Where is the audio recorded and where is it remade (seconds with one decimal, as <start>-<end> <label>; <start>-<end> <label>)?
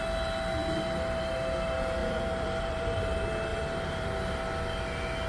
0.0-2.0 recorded; 2.0-3.0 remade; 3.0-3.5 recorded; 3.5-4.1 remade; 4.1-5.3 recorded